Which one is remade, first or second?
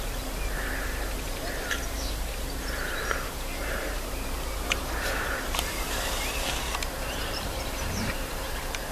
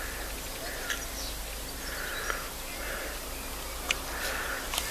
first